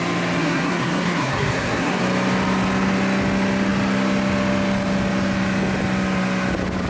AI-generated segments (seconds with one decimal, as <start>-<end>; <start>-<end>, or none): 0.4-2.0